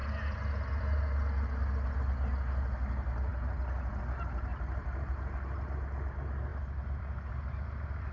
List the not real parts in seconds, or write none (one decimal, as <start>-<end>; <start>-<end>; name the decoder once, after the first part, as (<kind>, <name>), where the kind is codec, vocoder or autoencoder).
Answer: none